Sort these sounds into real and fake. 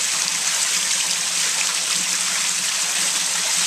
real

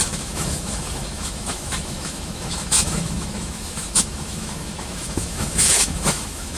fake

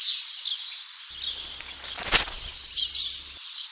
real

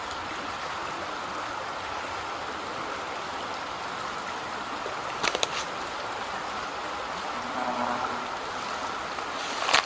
real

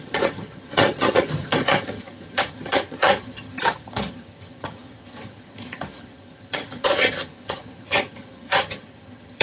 fake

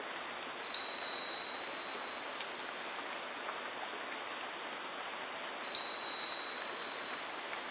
real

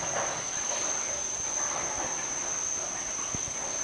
real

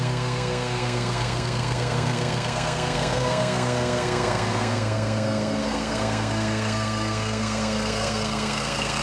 fake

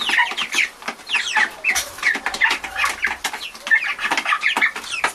fake